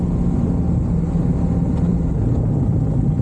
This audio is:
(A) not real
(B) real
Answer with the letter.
B